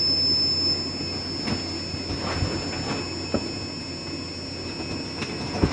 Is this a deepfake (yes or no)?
no